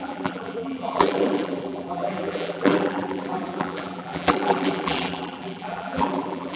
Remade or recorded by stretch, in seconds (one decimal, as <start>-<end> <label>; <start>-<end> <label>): 0.0-6.6 remade

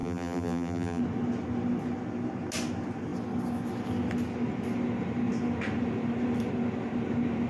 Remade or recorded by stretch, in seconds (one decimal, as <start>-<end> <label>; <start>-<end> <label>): 0.0-1.0 remade; 1.0-7.5 recorded

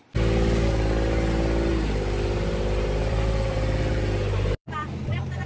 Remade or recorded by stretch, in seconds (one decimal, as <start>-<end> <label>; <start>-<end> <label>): 0.0-1.7 recorded; 1.7-5.0 remade; 5.0-5.5 recorded

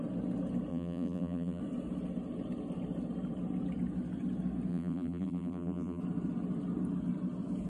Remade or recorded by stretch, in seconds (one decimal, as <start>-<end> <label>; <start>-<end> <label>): 0.0-0.7 recorded; 0.7-1.6 remade; 1.6-4.7 recorded; 4.7-6.0 remade; 6.0-7.7 recorded

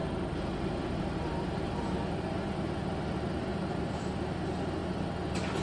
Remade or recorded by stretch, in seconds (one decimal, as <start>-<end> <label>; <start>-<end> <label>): 0.0-3.5 recorded; 3.5-4.3 remade; 4.3-5.6 recorded

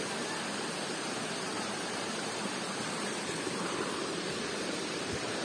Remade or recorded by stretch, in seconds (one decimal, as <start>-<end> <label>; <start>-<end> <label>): 0.0-1.2 recorded; 1.2-4.4 remade; 4.4-5.4 recorded